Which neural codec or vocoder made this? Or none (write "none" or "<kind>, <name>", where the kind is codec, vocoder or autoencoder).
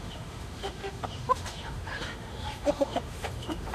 autoencoder, DAC-VAE